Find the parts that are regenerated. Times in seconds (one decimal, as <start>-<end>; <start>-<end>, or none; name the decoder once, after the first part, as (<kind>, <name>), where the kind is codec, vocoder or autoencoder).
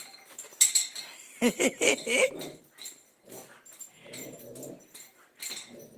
0.0-0.9 (vocoder, BigVGAN v2); 1.9-2.6